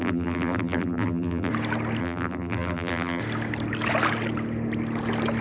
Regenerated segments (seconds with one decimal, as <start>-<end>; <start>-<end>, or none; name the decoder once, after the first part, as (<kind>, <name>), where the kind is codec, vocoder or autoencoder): 0.0-1.5 (vocoder, BigVGAN v2); 2.0-3.2